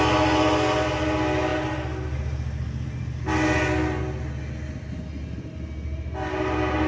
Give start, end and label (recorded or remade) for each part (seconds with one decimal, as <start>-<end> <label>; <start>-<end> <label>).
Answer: 0.0-6.9 recorded